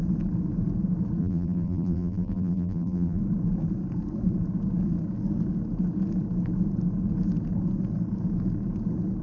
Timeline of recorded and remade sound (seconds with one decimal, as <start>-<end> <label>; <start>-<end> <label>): 0.0-1.2 recorded; 1.2-3.2 remade; 3.2-9.2 recorded